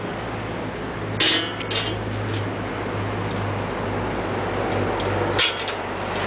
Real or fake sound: real